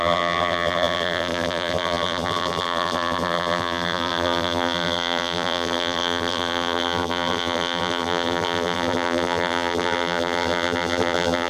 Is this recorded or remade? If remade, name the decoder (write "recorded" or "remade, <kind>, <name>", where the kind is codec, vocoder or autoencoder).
remade, vocoder, BigVGAN v2